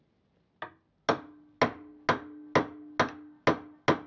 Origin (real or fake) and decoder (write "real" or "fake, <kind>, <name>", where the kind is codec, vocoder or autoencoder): real